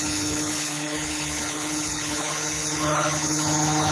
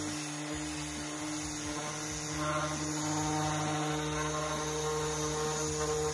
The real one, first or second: second